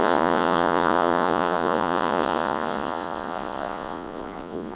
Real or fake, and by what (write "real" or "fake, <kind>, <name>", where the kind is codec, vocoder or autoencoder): fake, vocoder, Vocos